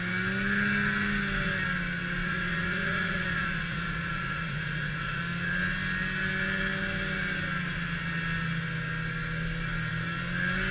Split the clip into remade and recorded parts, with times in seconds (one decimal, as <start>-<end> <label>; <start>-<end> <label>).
0.0-2.2 recorded; 2.2-5.2 remade; 5.2-10.7 recorded